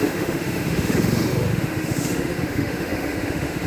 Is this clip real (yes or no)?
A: no